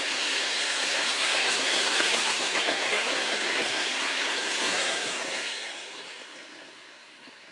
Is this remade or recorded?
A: remade